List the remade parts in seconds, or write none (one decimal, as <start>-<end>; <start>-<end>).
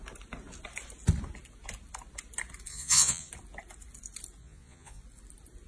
2.7-3.3; 4.4-5.0